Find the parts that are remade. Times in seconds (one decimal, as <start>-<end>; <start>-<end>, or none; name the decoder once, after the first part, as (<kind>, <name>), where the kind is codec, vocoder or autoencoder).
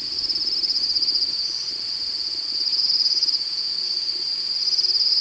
2.7-3.7 (vocoder, Vocos)